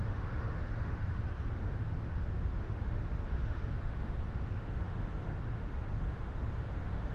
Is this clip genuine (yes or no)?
no